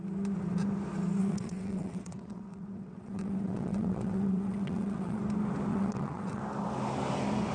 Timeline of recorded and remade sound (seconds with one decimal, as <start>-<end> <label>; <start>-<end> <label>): 0.0-1.2 recorded; 1.2-5.2 remade; 5.2-5.7 recorded; 5.7-6.4 remade; 6.4-7.5 recorded